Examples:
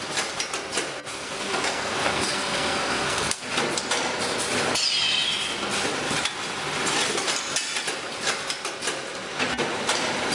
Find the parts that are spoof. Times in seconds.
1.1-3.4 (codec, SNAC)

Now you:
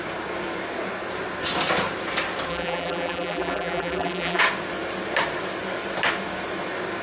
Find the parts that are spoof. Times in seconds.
2.5-4.4 (vocoder, BigVGAN v2)

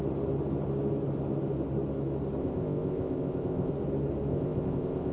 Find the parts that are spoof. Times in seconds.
2.4-3.7 (codec, ZipCodec); 4.3-5.1

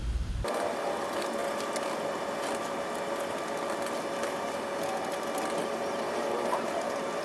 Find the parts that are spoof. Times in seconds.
0.0-1.4 (vocoder, BigVGAN v2); 5.7-7.2

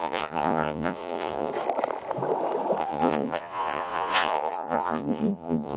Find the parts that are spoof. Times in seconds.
0.0-1.5 (vocoder, Vocos); 2.8-5.8

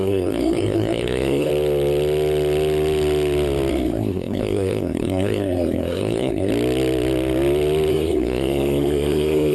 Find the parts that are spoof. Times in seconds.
0.0-1.5 (codec, SNAC); 3.7-6.5; 7.9-9.5